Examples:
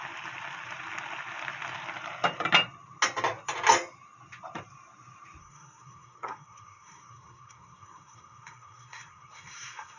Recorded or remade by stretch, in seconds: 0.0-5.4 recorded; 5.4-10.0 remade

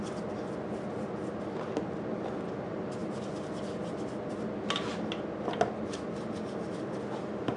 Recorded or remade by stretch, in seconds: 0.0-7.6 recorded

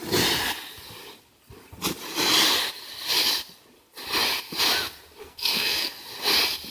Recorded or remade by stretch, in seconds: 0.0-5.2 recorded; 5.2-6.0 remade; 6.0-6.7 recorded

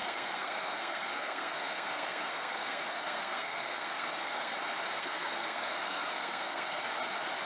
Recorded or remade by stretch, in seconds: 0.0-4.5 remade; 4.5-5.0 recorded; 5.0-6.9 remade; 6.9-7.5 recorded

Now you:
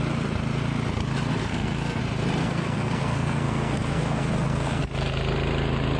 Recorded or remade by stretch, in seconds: 0.0-1.4 recorded; 1.4-2.0 remade; 2.0-2.4 recorded; 2.4-4.8 remade; 4.8-6.0 recorded

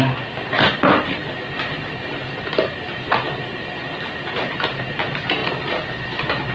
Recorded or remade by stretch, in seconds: 0.0-6.5 recorded